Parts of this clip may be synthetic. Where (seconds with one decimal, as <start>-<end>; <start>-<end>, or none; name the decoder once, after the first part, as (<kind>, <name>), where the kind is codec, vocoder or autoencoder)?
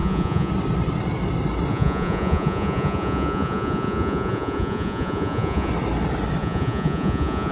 0.0-0.5 (vocoder, Vocos); 1.7-5.7; 6.4-7.5